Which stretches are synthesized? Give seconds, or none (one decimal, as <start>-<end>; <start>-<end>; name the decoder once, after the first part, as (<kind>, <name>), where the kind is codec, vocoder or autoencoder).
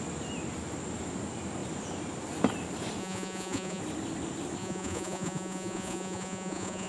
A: 3.0-3.8 (vocoder, Vocos); 4.6-6.9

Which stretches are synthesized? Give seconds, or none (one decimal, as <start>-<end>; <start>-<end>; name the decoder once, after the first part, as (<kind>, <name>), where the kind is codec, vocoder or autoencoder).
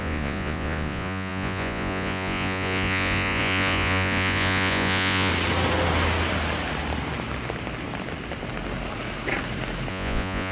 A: 0.0-5.3 (vocoder, Vocos); 9.9-10.5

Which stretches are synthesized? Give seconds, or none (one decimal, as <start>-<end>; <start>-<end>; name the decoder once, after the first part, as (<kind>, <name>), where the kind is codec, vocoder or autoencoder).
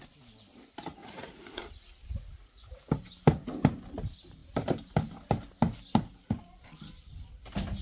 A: 1.0-1.6 (vocoder, Vocos); 2.1-2.9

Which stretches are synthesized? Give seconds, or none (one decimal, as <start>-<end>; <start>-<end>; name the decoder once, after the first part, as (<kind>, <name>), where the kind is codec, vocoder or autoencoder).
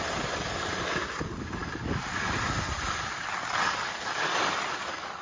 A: none